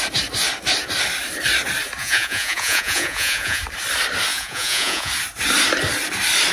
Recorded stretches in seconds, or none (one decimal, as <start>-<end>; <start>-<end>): 0.0-2.0; 3.6-4.3; 5.1-6.5